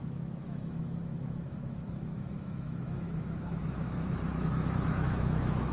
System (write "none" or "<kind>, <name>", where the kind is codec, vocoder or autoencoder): autoencoder, DAC-VAE